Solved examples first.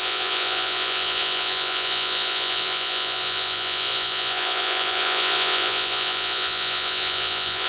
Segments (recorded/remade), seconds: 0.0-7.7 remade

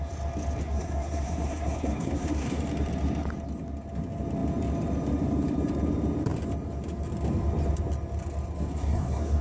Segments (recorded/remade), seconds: 0.0-0.6 recorded; 0.6-2.6 remade; 2.6-8.7 recorded; 8.7-9.4 remade

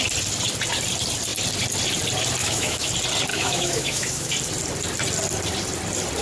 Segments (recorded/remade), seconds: 0.0-2.4 recorded; 2.4-2.9 remade; 2.9-3.3 recorded; 3.3-4.3 remade; 4.3-6.2 recorded